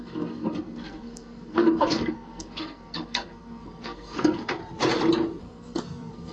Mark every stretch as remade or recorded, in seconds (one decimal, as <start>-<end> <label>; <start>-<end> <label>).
0.0-4.6 remade; 4.6-5.4 recorded; 5.4-6.3 remade